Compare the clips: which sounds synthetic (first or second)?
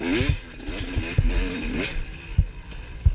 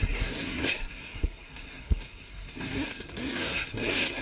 second